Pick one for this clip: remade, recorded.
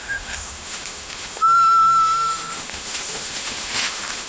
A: remade